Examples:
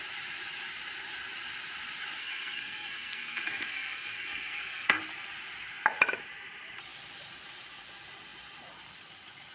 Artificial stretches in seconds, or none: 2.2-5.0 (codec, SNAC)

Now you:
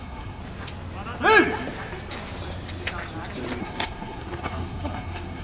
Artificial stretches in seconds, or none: 0.0-0.4 (codec, SNAC); 3.6-5.4

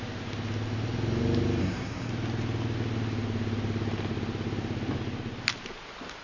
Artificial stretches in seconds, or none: 1.6-2.1 (codec, SNAC)

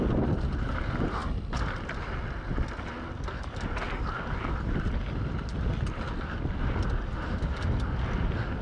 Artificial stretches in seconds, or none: none

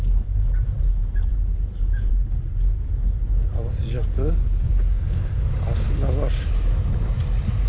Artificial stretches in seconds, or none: none

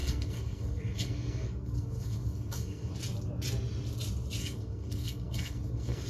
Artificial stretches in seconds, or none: 0.0-2.9 (codec, SNAC); 4.4-6.1

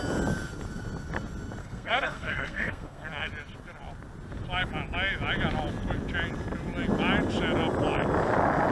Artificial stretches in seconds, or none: 1.6-3.3 (codec, SNAC)